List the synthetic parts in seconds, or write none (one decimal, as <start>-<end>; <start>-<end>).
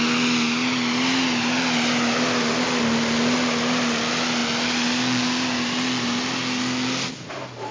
none